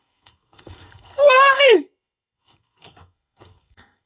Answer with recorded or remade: remade